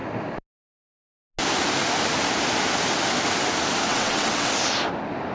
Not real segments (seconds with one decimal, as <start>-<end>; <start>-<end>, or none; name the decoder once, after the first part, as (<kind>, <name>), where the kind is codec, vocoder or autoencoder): 3.9-4.5 (vocoder, WaveNeXt)